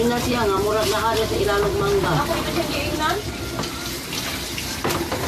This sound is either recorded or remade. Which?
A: recorded